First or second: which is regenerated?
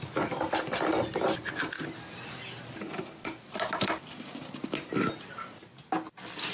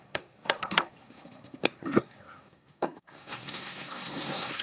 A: second